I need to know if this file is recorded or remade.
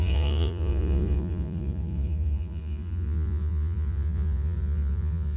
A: remade